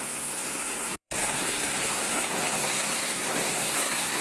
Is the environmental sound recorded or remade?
remade